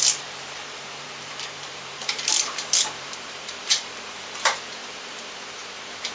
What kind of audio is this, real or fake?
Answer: fake